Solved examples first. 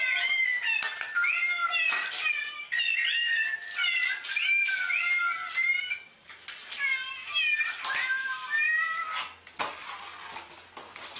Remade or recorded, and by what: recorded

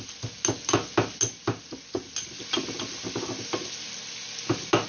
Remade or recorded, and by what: recorded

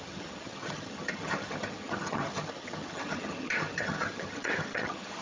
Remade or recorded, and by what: remade, vocoder, HiFi-GAN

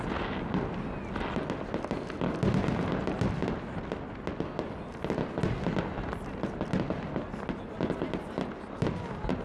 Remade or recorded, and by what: recorded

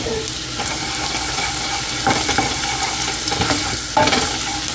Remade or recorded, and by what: recorded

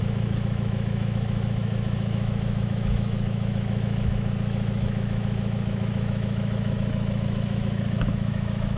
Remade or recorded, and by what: remade, autoencoder, DAC-VAE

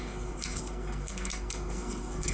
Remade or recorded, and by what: remade, codec, SNAC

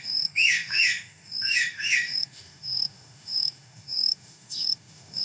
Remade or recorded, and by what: remade, autoencoder, DAC-VAE